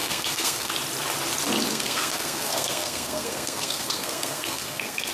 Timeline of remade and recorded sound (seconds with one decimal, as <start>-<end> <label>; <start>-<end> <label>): 0.0-0.7 remade; 0.7-1.7 recorded; 1.7-5.1 remade